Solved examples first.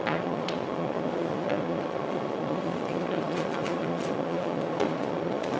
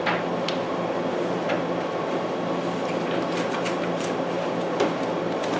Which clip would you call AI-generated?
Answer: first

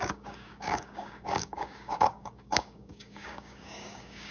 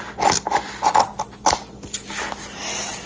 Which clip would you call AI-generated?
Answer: first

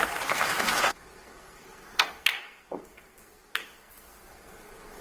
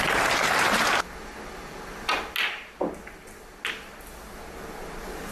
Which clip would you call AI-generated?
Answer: first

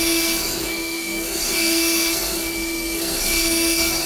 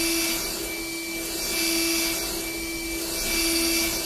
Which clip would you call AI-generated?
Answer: first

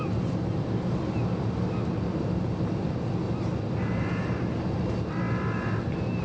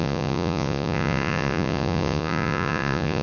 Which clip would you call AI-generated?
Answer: second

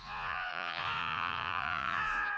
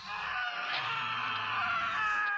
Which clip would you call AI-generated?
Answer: first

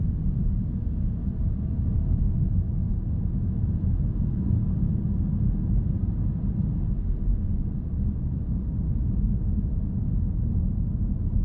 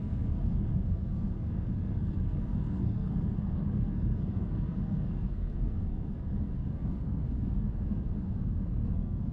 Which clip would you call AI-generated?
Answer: second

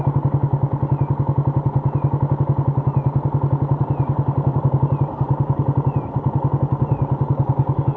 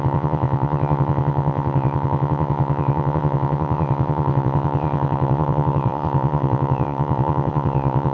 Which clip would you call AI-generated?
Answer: second